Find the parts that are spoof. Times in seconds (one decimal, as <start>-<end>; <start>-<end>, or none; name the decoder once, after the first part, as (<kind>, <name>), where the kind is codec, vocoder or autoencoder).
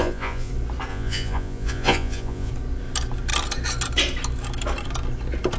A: 0.0-0.5 (vocoder, Vocos); 0.9-2.5